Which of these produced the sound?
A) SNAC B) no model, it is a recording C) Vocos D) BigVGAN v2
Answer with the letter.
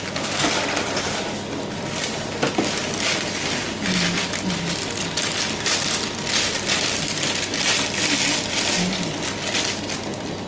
B